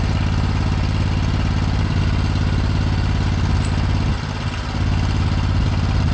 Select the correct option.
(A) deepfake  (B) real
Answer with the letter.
B